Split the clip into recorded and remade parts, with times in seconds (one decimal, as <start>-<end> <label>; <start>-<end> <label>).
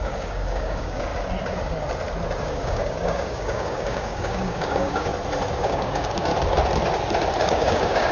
0.0-1.1 remade; 1.1-2.4 recorded; 2.4-5.1 remade; 5.1-5.6 recorded; 5.6-6.3 remade; 6.3-7.4 recorded; 7.4-8.1 remade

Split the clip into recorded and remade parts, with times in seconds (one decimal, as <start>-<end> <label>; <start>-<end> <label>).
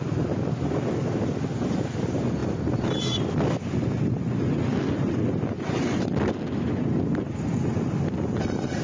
0.0-2.4 recorded; 2.4-3.0 remade; 3.0-8.8 recorded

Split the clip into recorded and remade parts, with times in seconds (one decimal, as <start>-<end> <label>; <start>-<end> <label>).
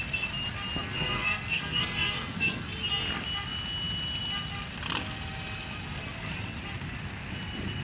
0.0-0.8 recorded; 0.8-2.7 remade; 2.7-7.8 recorded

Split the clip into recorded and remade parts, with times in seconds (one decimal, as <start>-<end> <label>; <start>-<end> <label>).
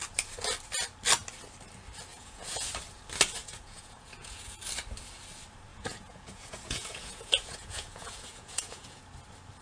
0.0-2.1 recorded; 2.1-2.7 remade; 2.7-3.4 recorded; 3.4-4.6 remade; 4.6-5.7 recorded; 5.7-9.0 remade; 9.0-9.6 recorded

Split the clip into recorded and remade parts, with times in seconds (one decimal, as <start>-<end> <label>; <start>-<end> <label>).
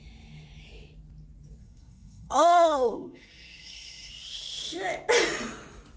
0.0-1.6 recorded; 1.6-4.1 remade; 4.1-6.0 recorded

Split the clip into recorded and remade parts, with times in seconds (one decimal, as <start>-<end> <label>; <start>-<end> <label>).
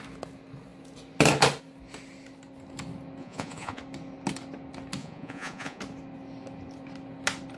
0.0-3.2 recorded; 3.2-3.8 remade; 3.8-5.0 recorded; 5.0-5.8 remade; 5.8-7.6 recorded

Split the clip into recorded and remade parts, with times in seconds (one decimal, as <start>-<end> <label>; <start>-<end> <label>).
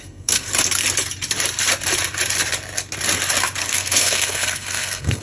0.0-0.5 remade; 0.5-3.6 recorded; 3.6-5.2 remade